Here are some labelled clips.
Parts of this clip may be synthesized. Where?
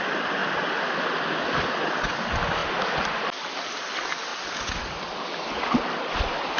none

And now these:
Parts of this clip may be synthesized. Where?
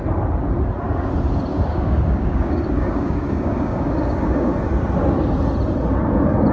1.5-4.6 (codec, DAC)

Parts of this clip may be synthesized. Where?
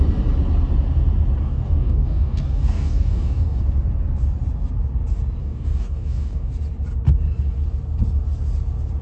1.4-3.6 (codec, DAC); 5.4-6.5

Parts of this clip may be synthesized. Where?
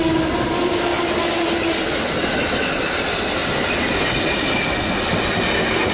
none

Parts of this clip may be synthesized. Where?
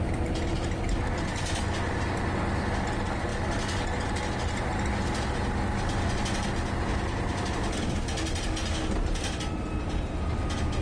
none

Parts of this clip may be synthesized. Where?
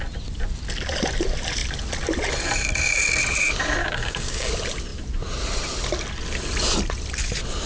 3.8-4.5 (codec, DAC)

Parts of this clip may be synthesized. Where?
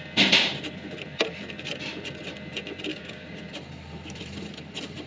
2.9-3.4 (codec, DAC)